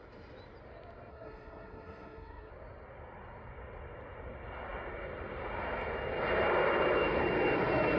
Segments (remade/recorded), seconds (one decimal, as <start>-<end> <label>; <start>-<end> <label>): 0.0-1.1 recorded; 1.1-2.5 remade; 2.5-8.0 recorded